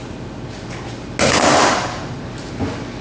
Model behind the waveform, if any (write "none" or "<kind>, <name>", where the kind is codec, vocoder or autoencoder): none